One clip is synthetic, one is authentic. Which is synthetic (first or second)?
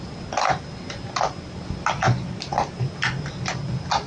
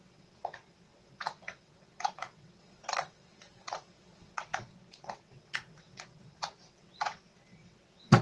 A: second